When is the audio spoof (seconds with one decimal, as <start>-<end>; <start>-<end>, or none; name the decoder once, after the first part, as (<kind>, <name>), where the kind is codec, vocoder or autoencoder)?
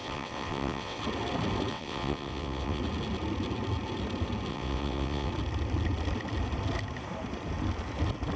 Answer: 0.0-1.0 (vocoder, WaveNeXt); 1.7-2.8; 4.5-5.3